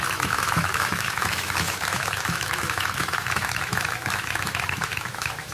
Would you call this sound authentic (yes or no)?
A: no